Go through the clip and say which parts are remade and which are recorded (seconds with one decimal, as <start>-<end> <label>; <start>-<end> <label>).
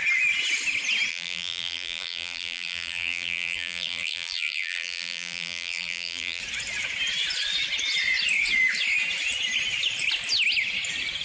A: 0.0-1.1 recorded; 1.1-6.4 remade; 6.4-11.2 recorded